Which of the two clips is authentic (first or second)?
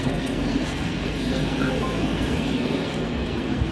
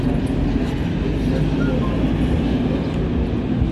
second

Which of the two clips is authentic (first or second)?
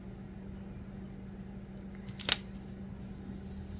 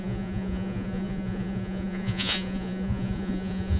first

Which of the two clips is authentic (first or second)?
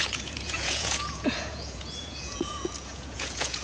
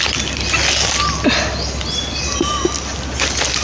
second